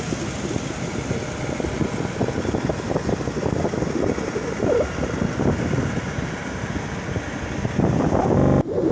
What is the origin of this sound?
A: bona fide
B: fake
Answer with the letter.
A